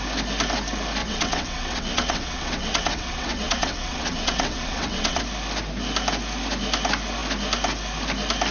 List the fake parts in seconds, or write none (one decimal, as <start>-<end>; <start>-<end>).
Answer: 1.0-5.2